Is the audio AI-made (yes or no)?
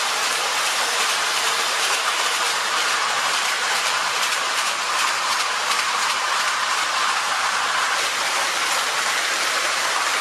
yes